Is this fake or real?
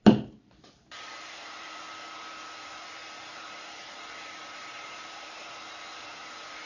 fake